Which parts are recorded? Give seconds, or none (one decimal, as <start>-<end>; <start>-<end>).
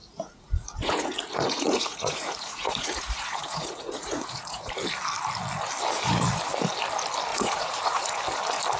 4.7-7.3; 8.2-8.8